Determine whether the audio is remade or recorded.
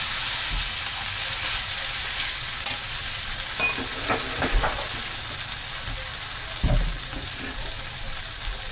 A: recorded